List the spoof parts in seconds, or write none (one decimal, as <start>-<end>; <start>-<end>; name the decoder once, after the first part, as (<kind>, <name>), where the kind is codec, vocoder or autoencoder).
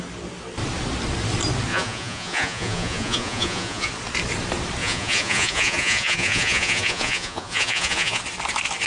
1.7-3.9 (vocoder, Vocos); 4.8-8.2